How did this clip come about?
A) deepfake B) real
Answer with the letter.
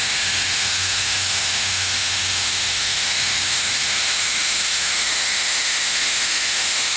A